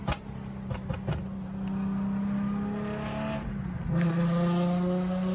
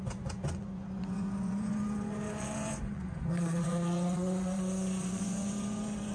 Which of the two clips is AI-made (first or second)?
second